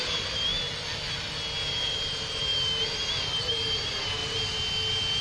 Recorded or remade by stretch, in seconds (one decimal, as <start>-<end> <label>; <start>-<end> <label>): 0.0-0.5 remade; 0.5-1.7 recorded; 1.7-2.5 remade; 2.5-3.2 recorded; 3.2-4.2 remade; 4.2-5.2 recorded